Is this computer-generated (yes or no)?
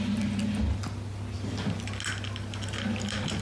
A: no